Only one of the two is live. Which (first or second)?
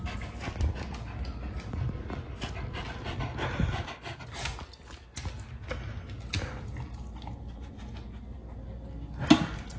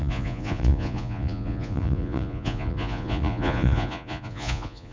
first